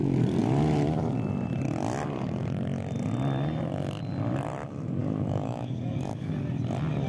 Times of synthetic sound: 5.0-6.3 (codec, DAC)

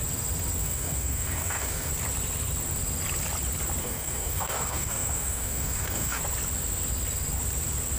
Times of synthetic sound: 0.6-1.9 (codec, DAC); 3.8-6.2

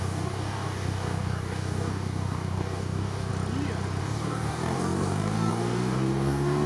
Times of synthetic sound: 0.0-3.3 (codec, DAC); 4.0-6.7

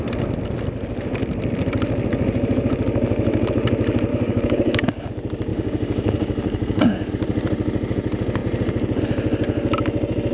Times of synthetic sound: 4.1-5.1 (codec, DAC); 5.5-7.1

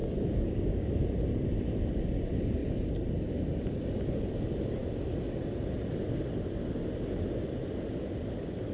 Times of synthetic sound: 0.0-1.0 (codec, DAC)

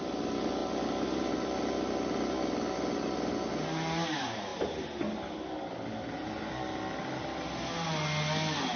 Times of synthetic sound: none

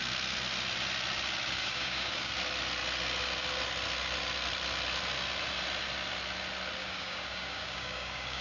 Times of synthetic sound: 1.6-2.3 (codec, DAC); 6.8-8.4